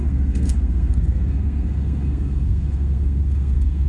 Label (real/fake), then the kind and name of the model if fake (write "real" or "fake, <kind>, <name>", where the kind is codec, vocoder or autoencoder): fake, codec, SNAC